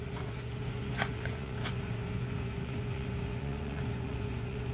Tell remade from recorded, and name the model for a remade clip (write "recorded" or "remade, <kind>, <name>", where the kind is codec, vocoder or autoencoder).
remade, vocoder, Vocos